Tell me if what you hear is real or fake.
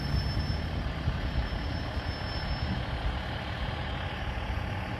real